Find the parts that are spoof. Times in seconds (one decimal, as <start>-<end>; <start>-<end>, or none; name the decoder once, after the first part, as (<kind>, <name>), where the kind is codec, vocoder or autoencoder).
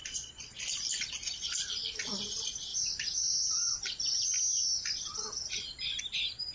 0.0-0.6 (vocoder, Vocos)